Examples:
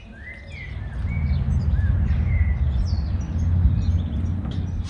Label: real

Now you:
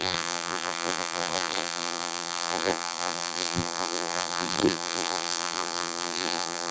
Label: fake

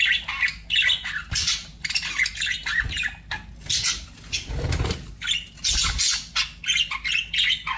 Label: real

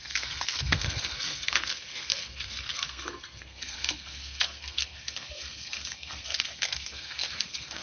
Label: fake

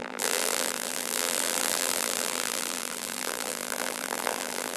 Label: fake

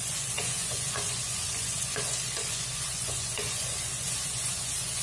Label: fake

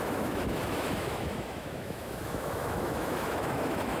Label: fake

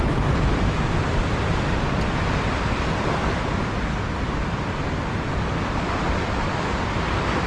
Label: real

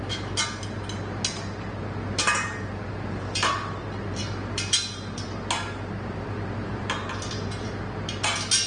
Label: real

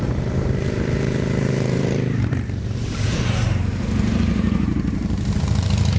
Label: fake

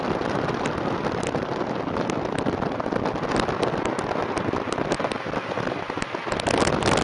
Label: real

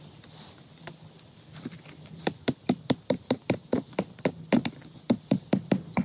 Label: fake